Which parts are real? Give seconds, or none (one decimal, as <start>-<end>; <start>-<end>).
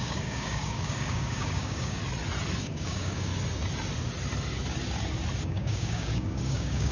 2.0-2.6; 3.3-5.4